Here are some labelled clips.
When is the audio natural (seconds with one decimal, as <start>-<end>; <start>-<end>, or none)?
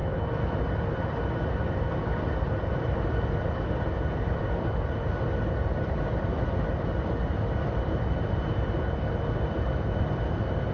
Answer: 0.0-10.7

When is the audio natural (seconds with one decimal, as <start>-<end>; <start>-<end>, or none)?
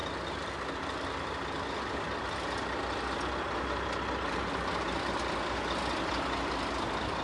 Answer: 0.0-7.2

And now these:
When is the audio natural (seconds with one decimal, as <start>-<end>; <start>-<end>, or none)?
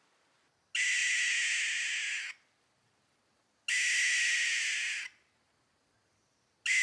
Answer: 0.0-6.8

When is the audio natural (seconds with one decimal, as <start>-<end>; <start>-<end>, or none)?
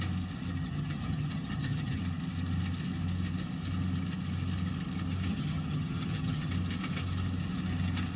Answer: 0.0-0.6; 2.0-5.3; 6.5-8.2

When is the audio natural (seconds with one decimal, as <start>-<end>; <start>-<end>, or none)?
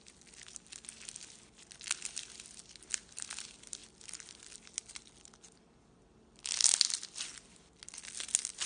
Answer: 0.0-8.7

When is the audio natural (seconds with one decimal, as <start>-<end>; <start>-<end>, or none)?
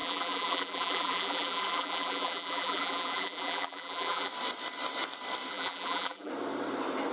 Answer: 4.3-5.5; 6.3-7.1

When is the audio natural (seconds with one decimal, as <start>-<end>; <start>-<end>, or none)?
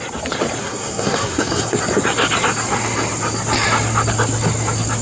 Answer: 0.0-0.6; 1.8-5.0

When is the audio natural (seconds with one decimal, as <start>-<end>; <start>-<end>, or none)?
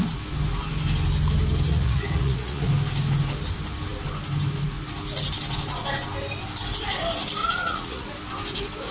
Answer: 0.0-1.7; 2.7-7.4; 8.1-8.9